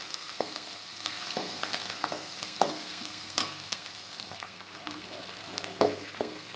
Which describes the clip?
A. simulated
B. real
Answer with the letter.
A